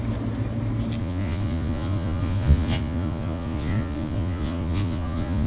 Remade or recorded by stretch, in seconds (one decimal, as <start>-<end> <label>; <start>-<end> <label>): 0.0-1.0 recorded; 1.0-5.5 remade

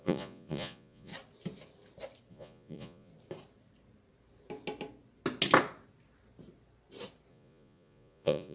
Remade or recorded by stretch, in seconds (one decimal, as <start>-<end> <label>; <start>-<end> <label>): 0.0-1.1 remade; 1.1-2.3 recorded; 2.3-3.1 remade; 3.1-7.3 recorded; 7.3-8.5 remade

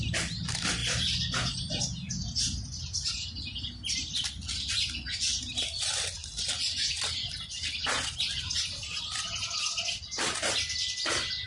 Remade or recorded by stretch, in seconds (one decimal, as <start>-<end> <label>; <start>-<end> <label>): 0.0-11.5 recorded

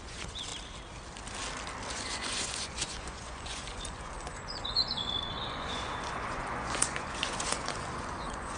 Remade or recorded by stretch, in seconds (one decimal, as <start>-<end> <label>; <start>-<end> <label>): 0.0-0.5 remade; 0.5-1.9 recorded; 1.9-8.6 remade